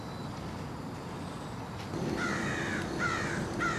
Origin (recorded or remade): recorded